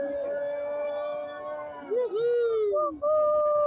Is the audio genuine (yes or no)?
yes